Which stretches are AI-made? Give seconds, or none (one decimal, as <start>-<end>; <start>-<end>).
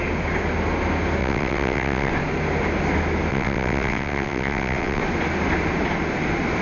1.2-2.1; 3.3-5.0